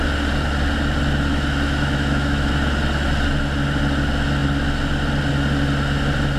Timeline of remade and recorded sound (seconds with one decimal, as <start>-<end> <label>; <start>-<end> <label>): 0.0-1.3 recorded; 1.3-2.5 remade; 2.5-6.4 recorded